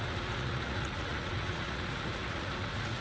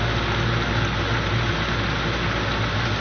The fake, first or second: first